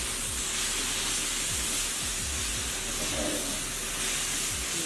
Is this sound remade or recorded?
recorded